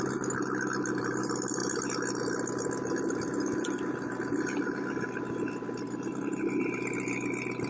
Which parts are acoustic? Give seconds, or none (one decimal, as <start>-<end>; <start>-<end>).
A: 0.0-7.7